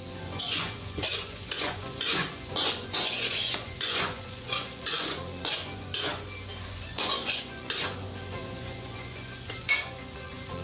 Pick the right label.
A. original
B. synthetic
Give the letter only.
B